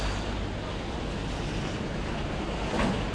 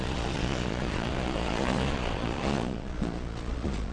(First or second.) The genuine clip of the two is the first